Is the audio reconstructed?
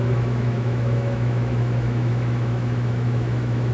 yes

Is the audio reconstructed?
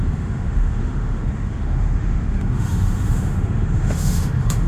yes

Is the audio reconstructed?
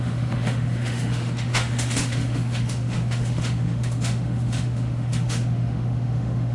yes